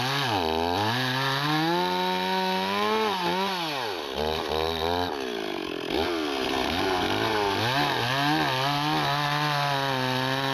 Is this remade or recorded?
recorded